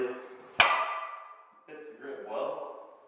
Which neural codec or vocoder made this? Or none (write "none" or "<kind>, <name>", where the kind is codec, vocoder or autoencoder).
none